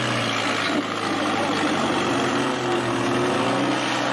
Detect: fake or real real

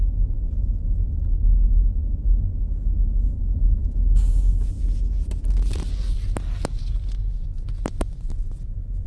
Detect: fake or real real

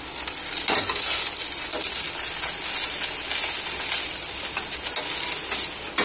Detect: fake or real real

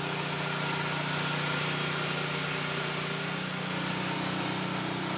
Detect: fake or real real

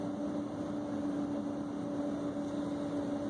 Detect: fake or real real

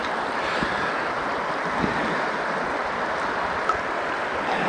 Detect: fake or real real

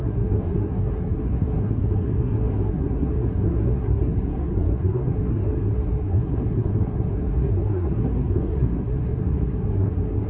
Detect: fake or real fake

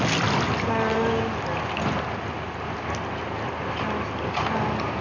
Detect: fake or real real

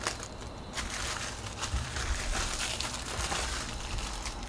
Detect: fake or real fake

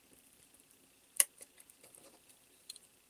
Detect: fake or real fake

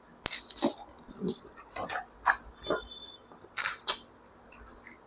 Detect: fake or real real